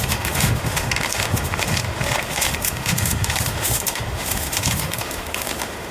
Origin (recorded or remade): remade